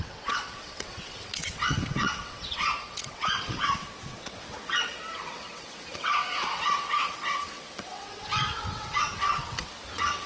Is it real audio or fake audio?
fake